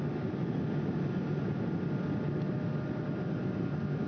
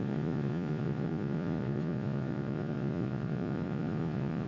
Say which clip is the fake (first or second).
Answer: second